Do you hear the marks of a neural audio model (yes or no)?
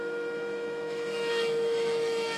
yes